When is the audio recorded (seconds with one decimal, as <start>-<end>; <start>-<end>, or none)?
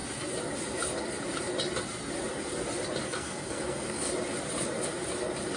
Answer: 0.0-3.0; 4.1-5.6